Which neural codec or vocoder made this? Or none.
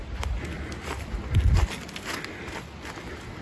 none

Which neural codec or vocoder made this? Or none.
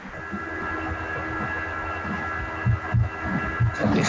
none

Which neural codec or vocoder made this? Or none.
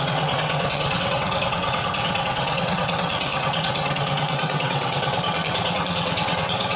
vocoder, WaveNeXt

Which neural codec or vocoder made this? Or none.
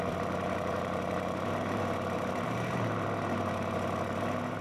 vocoder, BigVGAN v2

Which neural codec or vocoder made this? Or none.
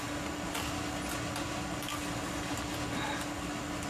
none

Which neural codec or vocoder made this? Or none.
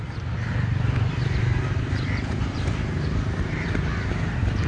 vocoder, BigVGAN v2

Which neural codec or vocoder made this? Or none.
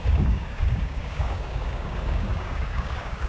codec, DAC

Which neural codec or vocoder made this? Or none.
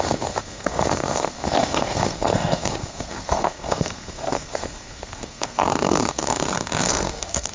codec, SNAC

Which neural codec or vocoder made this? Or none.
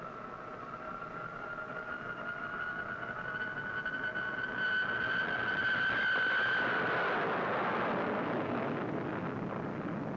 none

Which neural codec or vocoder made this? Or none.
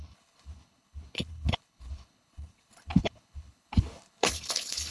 codec, HILCodec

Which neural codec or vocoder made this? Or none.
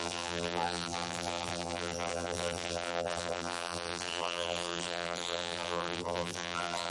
vocoder, BigVGAN v2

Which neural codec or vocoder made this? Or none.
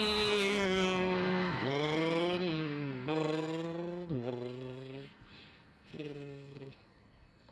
codec, SNAC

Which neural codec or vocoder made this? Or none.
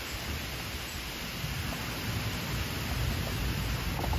none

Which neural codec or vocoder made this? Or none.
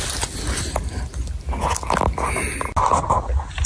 none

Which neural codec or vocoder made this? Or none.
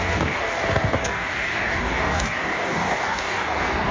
codec, DAC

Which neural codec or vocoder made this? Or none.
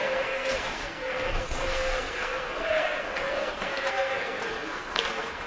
codec, SNAC